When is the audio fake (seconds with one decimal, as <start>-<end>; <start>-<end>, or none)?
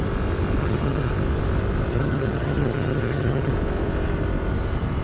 0.6-1.1; 1.9-3.5